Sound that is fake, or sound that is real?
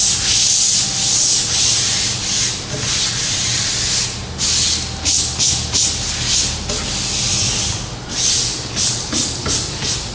real